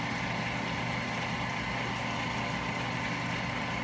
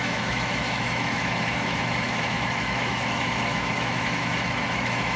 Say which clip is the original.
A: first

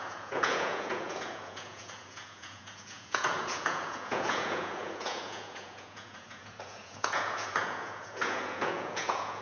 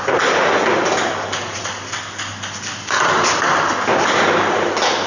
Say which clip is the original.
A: second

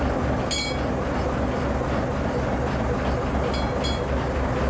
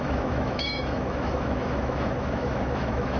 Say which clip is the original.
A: first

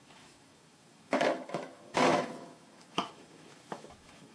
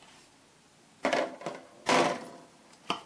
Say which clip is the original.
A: second